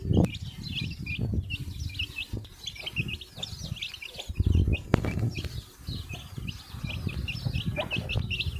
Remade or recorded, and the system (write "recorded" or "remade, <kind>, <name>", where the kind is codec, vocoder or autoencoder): recorded